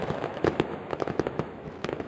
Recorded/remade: remade